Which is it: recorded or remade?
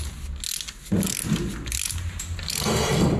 recorded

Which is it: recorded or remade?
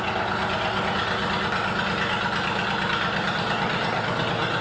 recorded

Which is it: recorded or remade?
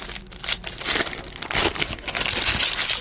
recorded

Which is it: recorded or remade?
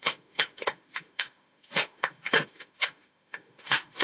remade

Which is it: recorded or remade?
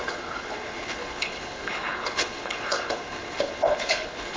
remade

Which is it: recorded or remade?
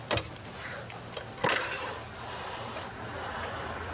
recorded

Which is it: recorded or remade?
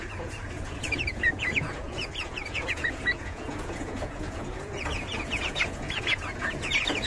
remade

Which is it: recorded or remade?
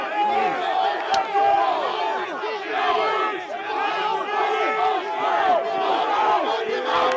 recorded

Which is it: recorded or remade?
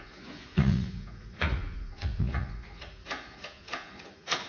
remade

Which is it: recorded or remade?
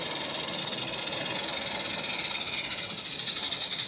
recorded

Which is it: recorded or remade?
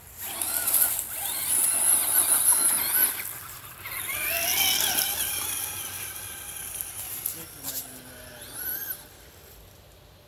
recorded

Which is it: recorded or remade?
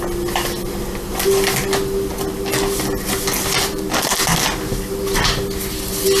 recorded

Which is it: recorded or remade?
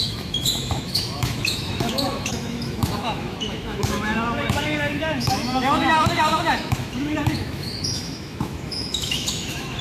remade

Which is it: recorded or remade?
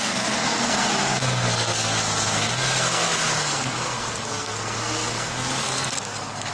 remade